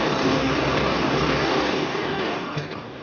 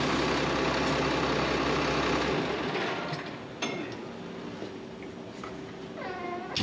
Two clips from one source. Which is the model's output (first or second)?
first